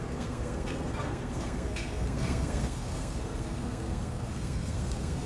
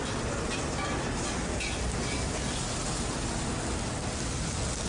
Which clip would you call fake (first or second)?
first